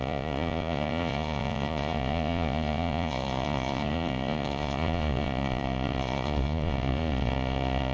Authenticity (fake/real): fake